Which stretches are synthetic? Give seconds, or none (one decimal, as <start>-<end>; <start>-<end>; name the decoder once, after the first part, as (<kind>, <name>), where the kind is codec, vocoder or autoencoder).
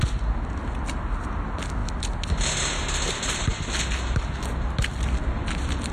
none